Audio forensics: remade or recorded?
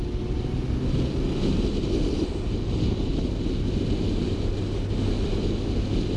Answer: recorded